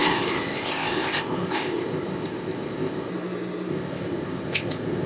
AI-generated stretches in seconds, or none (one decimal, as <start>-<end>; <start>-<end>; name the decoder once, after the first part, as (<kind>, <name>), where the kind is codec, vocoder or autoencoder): 0.0-3.1 (codec, ZipCodec); 3.7-5.1